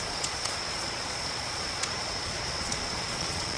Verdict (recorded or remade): remade